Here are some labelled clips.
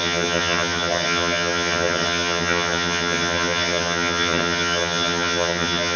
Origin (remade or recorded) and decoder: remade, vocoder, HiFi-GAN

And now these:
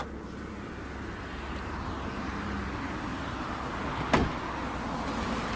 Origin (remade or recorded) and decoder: recorded